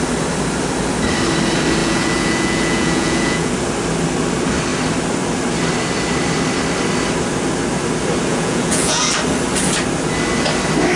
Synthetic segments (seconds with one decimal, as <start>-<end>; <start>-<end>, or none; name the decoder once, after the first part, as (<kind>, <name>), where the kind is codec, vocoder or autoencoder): 1.8-3.5 (vocoder, Vocos); 8.3-9.1